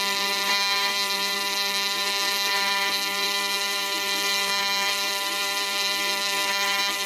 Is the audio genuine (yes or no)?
no